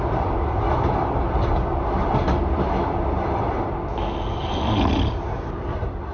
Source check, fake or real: real